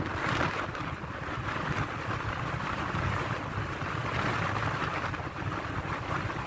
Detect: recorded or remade recorded